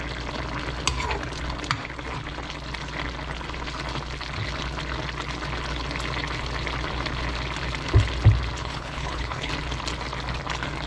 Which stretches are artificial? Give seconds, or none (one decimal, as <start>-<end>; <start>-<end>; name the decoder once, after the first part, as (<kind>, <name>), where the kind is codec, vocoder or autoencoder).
8.6-9.5 (codec, HILCodec)